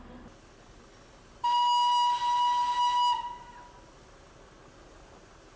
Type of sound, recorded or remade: recorded